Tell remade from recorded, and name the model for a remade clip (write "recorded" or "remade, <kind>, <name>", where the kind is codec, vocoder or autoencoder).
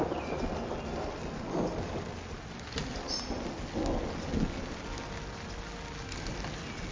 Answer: recorded